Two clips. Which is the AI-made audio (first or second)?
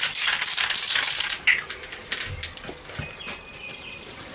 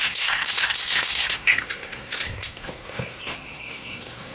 second